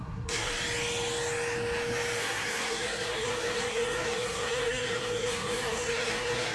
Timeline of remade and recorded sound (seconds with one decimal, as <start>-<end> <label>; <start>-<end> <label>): 0.0-0.5 remade; 0.5-2.2 recorded; 2.2-6.5 remade